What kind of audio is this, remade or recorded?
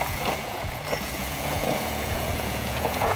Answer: remade